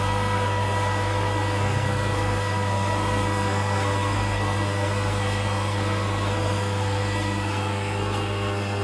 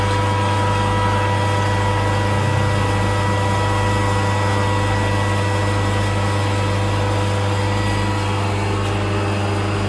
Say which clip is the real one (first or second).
second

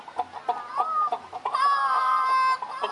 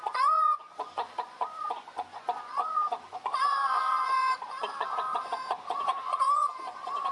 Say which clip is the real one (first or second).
first